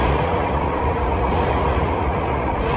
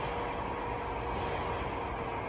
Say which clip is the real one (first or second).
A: second